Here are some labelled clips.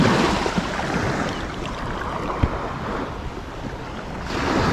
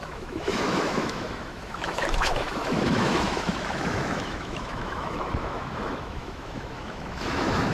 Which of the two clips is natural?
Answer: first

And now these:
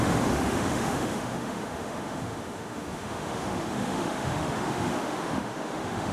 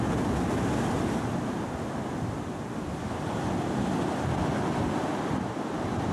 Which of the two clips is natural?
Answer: second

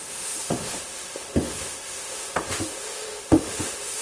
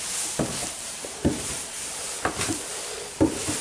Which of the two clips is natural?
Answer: second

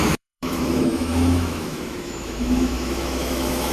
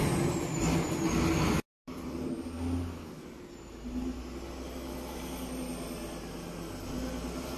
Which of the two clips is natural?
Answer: second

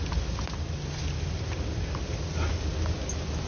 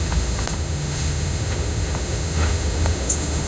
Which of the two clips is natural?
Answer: first